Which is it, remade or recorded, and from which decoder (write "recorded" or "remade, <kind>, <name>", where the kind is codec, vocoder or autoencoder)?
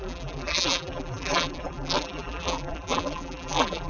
remade, vocoder, BigVGAN v2